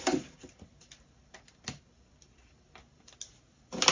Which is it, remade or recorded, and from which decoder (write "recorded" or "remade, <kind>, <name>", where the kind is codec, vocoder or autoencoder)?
recorded